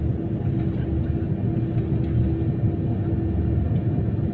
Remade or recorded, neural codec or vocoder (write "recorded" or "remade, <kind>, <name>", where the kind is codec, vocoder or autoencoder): recorded